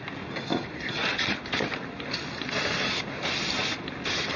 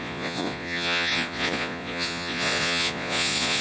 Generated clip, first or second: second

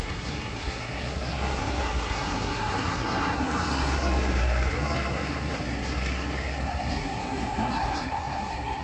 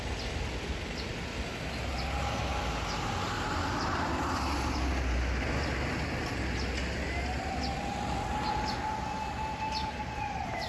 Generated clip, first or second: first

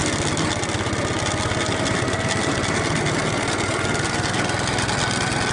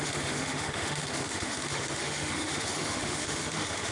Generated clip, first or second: second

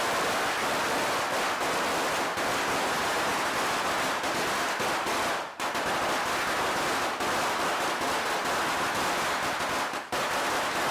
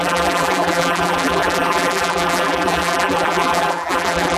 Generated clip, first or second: second